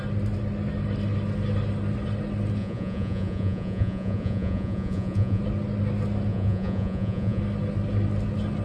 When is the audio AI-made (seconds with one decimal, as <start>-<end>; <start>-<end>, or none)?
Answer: 2.6-5.4; 6.3-7.4